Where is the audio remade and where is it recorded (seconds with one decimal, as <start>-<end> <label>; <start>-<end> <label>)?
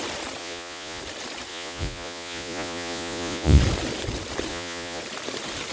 0.0-0.4 recorded; 0.4-1.0 remade; 1.0-1.5 recorded; 1.5-3.6 remade; 3.6-4.5 recorded; 4.5-5.0 remade; 5.0-5.7 recorded